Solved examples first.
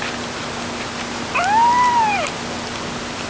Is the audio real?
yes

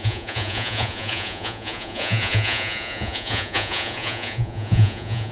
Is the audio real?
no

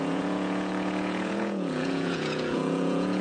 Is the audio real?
no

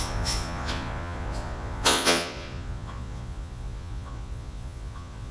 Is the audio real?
no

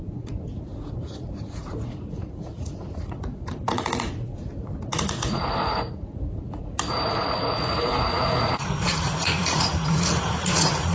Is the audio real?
no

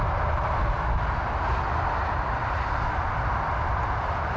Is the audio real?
yes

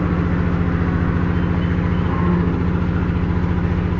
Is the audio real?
yes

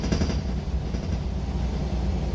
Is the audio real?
yes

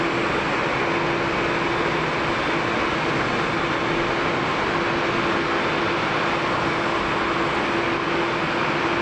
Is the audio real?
yes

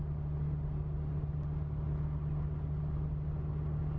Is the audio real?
yes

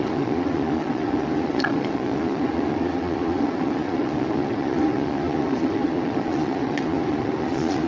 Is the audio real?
no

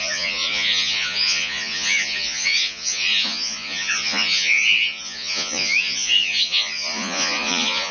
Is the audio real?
no